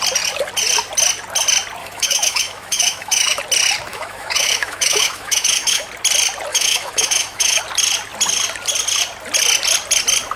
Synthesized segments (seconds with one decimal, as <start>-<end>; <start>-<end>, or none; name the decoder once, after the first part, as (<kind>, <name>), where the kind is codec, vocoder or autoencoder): 1.8-3.4 (autoencoder, DAC-VAE); 3.9-5.9; 6.5-7.6

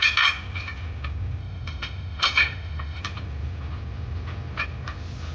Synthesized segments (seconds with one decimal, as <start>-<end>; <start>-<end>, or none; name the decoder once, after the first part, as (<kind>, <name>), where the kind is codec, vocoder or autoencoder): 1.4-3.0 (autoencoder, DAC-VAE)